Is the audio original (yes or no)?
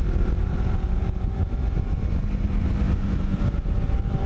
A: no